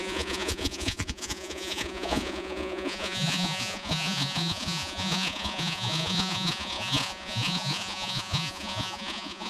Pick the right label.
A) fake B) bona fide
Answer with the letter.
A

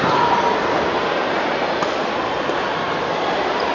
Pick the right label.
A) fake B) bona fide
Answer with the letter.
B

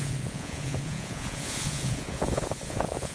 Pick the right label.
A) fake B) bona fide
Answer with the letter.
A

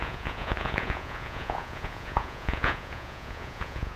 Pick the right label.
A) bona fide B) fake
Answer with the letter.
B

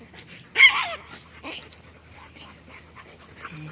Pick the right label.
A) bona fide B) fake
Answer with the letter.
A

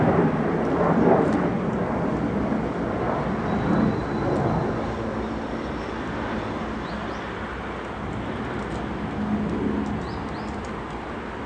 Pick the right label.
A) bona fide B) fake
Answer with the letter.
A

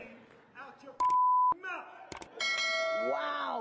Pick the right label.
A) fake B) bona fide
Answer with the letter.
B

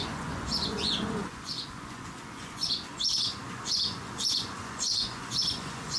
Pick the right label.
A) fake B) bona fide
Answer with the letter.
A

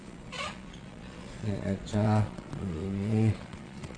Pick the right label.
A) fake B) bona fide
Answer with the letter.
A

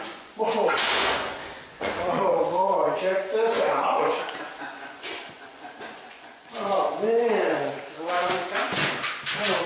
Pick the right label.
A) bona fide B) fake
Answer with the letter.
B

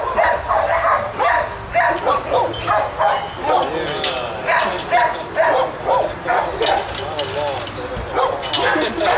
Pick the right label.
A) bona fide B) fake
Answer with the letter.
A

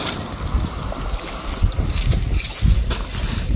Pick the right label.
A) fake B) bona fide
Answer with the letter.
B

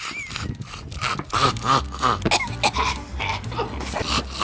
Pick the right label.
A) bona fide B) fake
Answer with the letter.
A